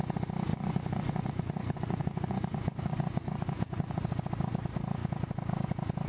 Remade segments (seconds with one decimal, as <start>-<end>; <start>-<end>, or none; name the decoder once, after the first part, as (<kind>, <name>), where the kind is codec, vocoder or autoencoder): 0.5-4.0 (vocoder, Vocos)